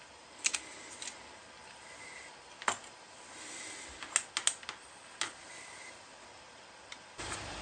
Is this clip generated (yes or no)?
no